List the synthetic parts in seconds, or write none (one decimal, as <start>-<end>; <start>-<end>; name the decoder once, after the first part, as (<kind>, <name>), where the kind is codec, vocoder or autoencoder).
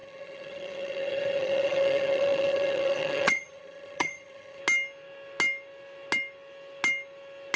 0.0-4.6 (vocoder, HiFi-GAN)